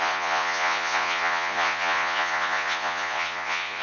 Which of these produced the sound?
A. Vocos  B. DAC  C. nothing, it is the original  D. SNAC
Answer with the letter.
A